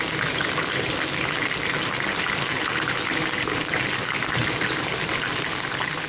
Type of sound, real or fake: real